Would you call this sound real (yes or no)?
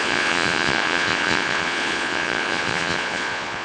no